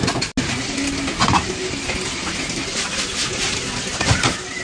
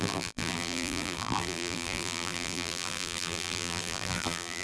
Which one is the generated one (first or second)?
second